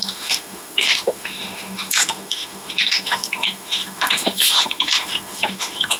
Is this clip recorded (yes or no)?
no